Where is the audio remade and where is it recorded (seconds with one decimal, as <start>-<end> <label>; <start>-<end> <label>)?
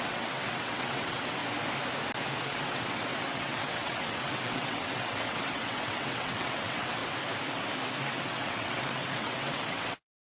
0.0-1.4 remade; 1.4-2.4 recorded; 2.4-7.0 remade; 7.0-8.0 recorded; 8.0-10.2 remade